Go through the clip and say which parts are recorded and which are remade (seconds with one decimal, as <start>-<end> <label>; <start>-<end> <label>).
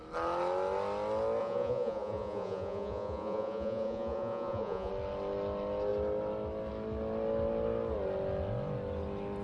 0.0-1.4 recorded; 1.4-4.9 remade; 4.9-9.4 recorded